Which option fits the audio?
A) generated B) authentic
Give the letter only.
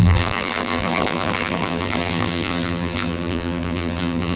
A